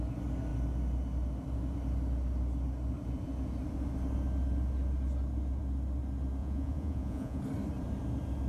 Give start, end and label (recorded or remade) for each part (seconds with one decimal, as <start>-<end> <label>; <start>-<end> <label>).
0.0-6.4 recorded; 6.4-7.4 remade; 7.4-8.5 recorded

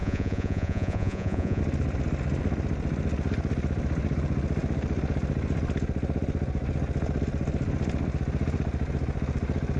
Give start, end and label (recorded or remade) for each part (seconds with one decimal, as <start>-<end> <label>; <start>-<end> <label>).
0.0-1.6 remade; 1.6-9.8 recorded

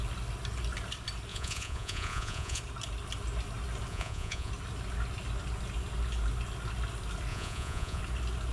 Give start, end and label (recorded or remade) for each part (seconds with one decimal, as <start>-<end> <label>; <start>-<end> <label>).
0.0-1.3 recorded; 1.3-2.6 remade; 2.6-3.9 recorded; 3.9-4.5 remade; 4.5-7.3 recorded; 7.3-8.0 remade; 8.0-8.5 recorded

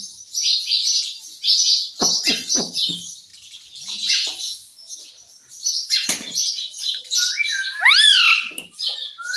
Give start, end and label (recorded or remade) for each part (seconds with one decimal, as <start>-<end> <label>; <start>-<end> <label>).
0.0-3.3 recorded; 3.3-5.1 remade; 5.1-9.4 recorded